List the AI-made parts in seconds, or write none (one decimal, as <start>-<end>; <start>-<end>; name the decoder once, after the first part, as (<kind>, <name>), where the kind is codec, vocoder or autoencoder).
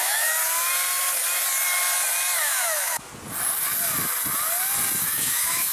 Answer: 0.0-0.4 (autoencoder, DAC-VAE); 2.4-3.1; 5.0-5.7